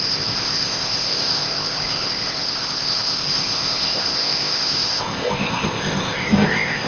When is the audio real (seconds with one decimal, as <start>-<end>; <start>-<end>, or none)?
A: none